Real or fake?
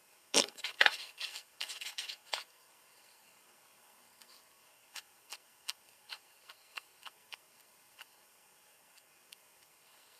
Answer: fake